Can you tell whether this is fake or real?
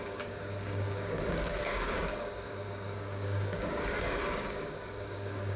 fake